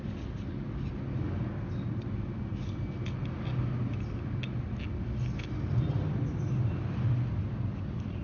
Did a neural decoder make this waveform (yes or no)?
no